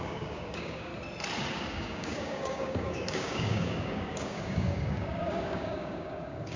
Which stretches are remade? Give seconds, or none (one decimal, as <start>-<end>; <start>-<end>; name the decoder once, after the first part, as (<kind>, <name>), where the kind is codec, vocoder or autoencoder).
0.0-0.9 (codec, DAC); 1.5-6.6